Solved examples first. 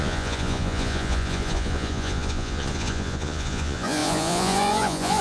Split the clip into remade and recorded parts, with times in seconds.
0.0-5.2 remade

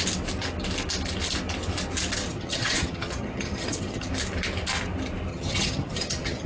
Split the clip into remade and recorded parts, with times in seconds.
0.0-2.3 recorded; 2.3-4.1 remade; 4.1-5.3 recorded; 5.3-6.5 remade

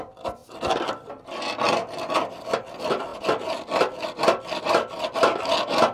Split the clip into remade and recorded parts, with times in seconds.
0.0-0.4 recorded; 0.4-1.1 remade; 1.1-5.9 recorded

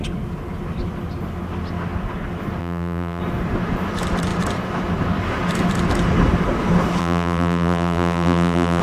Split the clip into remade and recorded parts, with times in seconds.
0.0-2.6 recorded; 2.6-3.2 remade; 3.2-7.0 recorded; 7.0-8.8 remade